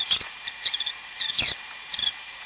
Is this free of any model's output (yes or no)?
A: no